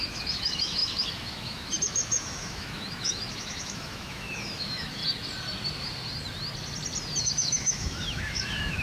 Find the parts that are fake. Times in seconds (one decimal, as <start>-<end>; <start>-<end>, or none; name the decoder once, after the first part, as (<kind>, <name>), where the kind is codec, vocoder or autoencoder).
0.0-5.0 (autoencoder, DAC-VAE); 7.2-8.8